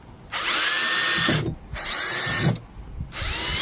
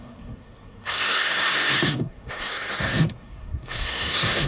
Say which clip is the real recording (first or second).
first